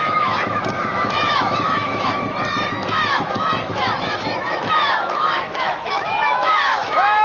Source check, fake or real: fake